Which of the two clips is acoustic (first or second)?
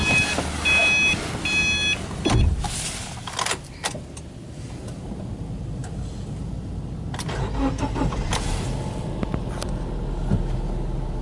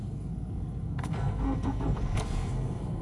first